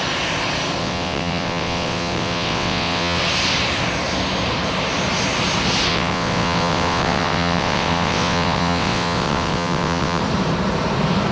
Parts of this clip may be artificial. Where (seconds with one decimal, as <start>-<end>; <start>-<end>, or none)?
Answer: 0.8-3.2; 5.9-10.2